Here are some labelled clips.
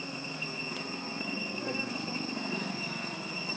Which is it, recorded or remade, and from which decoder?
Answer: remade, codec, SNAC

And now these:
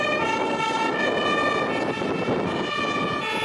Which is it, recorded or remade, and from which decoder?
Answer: recorded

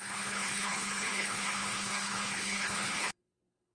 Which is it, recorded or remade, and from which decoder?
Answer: remade, codec, HILCodec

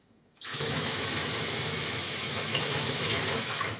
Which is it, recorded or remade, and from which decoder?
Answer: remade, autoencoder, DAC-VAE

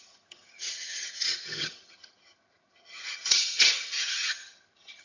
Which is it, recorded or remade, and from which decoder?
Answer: remade, vocoder, HiFi-GAN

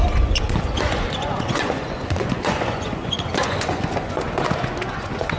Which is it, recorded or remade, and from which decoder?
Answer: remade, vocoder, Vocos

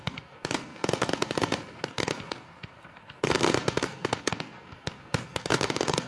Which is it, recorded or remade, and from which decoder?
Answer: remade, codec, SNAC